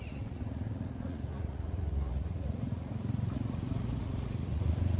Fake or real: fake